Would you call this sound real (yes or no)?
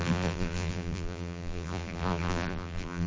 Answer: no